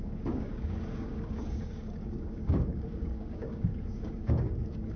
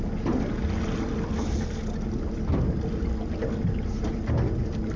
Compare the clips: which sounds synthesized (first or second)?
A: first